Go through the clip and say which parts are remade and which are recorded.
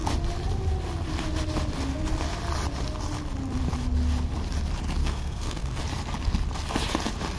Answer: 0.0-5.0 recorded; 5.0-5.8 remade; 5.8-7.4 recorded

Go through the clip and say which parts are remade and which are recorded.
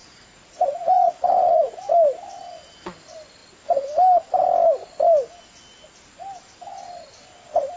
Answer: 0.0-1.9 remade; 1.9-7.8 recorded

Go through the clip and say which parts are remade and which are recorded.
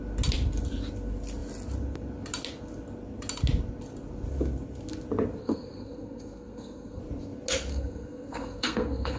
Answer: 0.0-5.4 recorded; 5.4-7.0 remade; 7.0-7.7 recorded; 7.7-9.2 remade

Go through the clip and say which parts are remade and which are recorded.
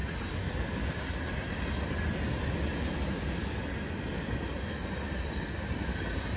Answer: 0.0-6.4 recorded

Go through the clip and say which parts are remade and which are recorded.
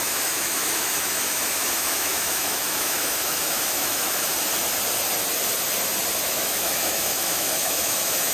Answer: 0.0-4.3 remade; 4.3-6.2 recorded; 6.2-8.3 remade